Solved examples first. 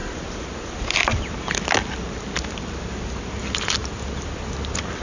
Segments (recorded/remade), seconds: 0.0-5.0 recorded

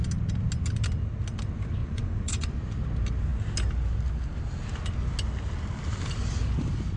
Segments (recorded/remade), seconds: 0.0-1.8 recorded; 1.8-2.5 remade; 2.5-7.0 recorded

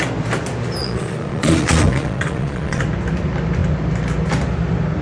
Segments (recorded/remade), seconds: 0.0-0.8 recorded; 0.8-2.8 remade; 2.8-5.0 recorded